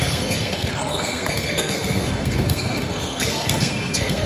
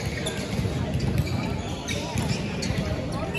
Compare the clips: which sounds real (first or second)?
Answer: second